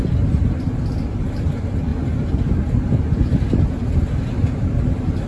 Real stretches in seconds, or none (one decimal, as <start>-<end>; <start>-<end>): 0.0-5.3